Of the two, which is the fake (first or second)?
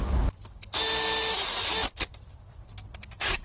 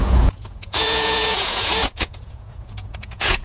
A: second